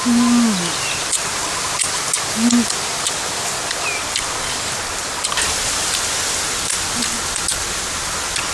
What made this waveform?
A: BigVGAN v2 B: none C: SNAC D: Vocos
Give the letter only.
B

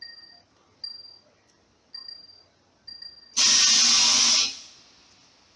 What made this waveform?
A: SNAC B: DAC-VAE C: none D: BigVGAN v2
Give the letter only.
C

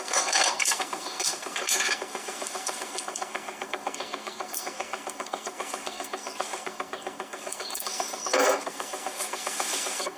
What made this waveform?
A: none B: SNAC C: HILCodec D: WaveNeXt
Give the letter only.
B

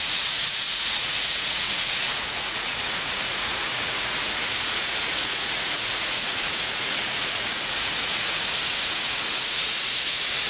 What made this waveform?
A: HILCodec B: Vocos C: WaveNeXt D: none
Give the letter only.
B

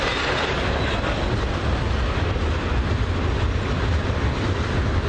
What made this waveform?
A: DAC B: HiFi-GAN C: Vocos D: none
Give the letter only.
D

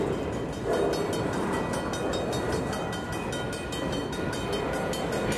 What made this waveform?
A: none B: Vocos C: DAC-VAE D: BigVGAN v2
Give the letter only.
A